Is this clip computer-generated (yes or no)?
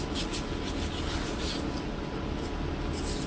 no